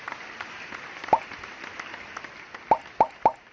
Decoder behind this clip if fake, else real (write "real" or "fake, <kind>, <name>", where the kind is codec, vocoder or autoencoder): real